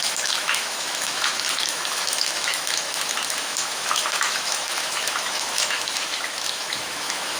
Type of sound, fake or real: fake